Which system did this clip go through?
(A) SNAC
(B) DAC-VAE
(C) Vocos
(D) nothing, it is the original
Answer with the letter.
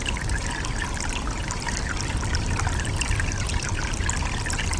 D